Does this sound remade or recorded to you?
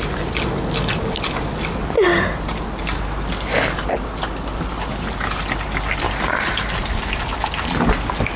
recorded